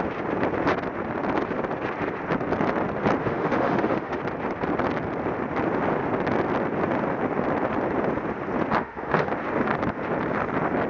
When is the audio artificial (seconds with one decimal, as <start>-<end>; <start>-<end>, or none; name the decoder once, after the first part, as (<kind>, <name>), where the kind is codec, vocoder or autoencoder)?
3.2-4.2 (autoencoder, DAC-VAE); 8.8-9.3

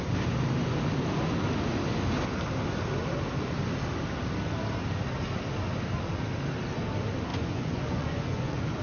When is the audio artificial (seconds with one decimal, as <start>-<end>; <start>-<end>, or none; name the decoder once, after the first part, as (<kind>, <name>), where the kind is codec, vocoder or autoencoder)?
7.3-8.8 (vocoder, Vocos)

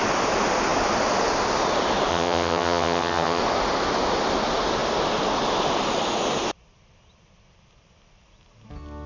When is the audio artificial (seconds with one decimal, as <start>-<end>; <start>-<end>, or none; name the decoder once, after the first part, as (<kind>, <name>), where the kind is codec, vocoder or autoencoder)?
2.1-3.4 (vocoder, HiFi-GAN)

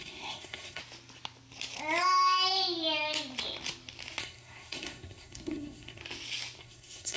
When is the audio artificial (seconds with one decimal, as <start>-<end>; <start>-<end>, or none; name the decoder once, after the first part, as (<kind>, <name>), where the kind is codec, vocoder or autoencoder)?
0.0-0.8 (codec, SNAC); 4.2-6.0; 6.6-7.2

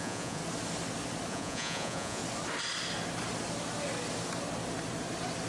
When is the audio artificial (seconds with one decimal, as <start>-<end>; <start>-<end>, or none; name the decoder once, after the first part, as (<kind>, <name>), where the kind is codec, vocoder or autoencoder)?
0.0-0.4 (vocoder, Vocos); 1.3-2.2

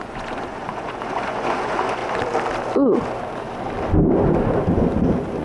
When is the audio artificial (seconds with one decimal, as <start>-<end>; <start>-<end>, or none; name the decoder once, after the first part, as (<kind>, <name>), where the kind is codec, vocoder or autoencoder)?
0.0-2.0 (vocoder, Vocos)

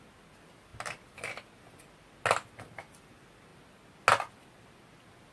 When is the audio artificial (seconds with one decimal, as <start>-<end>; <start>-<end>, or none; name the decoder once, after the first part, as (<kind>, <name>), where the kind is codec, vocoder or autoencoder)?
none

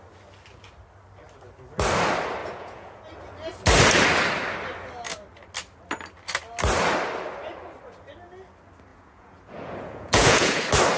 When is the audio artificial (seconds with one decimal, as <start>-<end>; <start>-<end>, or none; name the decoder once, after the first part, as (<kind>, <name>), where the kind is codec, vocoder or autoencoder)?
2.4-3.0 (vocoder, Vocos); 8.9-10.6